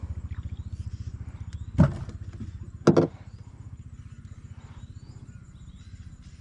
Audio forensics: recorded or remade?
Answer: recorded